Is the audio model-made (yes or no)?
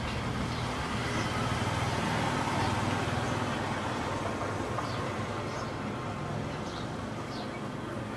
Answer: no